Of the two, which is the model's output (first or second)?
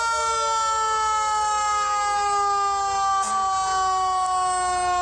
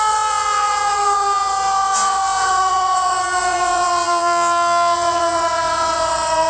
second